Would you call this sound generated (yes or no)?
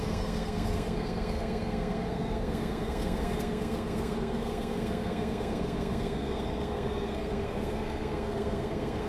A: yes